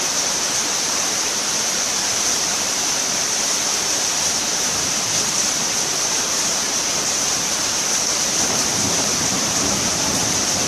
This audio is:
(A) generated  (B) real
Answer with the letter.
A